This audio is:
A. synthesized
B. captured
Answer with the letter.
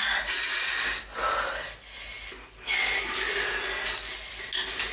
B